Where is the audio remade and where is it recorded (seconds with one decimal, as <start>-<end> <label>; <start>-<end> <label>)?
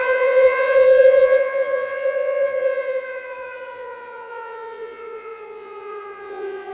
0.0-6.7 remade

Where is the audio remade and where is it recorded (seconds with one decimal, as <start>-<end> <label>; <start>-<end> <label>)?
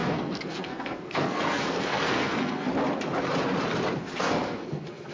0.0-2.7 remade; 2.7-4.2 recorded; 4.2-5.1 remade